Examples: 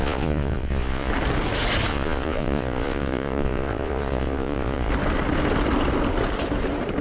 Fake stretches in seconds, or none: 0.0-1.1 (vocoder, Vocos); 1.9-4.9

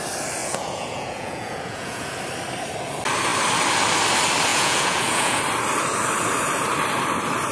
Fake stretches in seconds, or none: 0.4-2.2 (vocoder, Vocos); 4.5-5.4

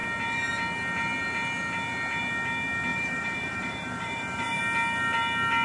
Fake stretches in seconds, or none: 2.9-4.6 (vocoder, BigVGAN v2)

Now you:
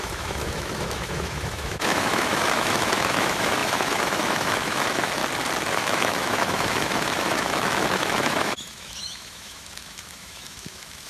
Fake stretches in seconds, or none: 0.0-5.2 (autoencoder, DAC-VAE); 5.7-11.1

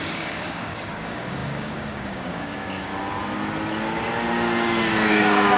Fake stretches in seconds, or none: 0.0-2.9 (codec, DAC); 4.8-5.6